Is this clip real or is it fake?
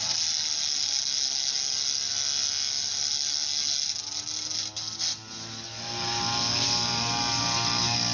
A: real